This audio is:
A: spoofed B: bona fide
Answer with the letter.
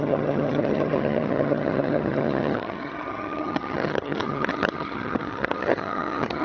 A